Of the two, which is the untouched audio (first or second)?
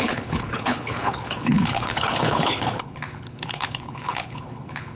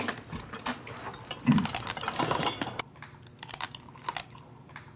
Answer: second